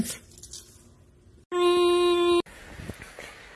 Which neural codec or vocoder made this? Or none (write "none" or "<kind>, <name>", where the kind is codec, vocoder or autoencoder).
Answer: none